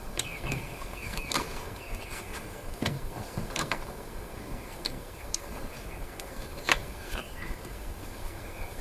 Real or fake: fake